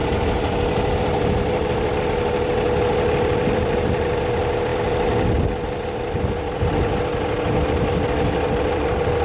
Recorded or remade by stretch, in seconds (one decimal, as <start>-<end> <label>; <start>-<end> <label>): 0.0-9.2 recorded